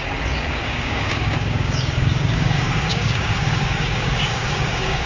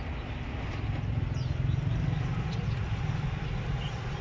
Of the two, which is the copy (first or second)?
first